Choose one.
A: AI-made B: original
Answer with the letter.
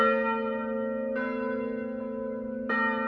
B